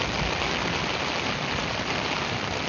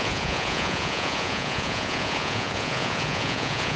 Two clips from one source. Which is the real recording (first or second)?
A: first